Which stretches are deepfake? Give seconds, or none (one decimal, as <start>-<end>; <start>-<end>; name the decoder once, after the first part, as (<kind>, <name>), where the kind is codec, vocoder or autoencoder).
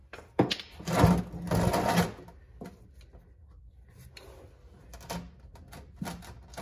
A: none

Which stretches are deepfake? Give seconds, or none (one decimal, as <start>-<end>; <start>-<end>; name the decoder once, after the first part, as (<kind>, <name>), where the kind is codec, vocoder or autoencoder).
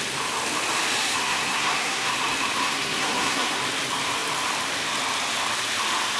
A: 1.0-2.1 (codec, SNAC); 2.6-3.6